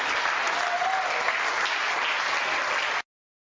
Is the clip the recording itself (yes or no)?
yes